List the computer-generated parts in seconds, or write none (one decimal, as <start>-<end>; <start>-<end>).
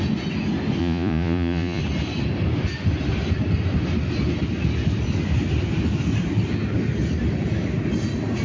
0.8-1.8